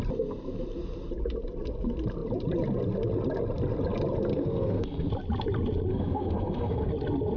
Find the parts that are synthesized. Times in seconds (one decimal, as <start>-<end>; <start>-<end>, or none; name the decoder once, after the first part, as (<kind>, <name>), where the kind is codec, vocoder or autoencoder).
4.3-5.1 (codec, SNAC); 5.9-6.9